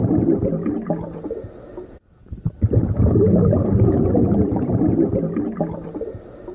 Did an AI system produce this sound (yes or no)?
no